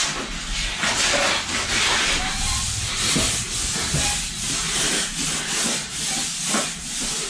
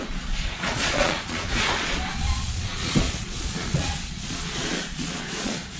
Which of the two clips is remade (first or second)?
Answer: second